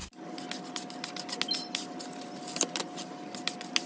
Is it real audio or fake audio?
real